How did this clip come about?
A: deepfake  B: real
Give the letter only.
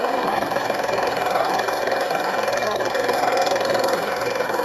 A